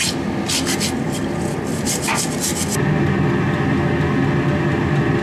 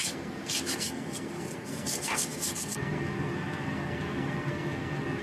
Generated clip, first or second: second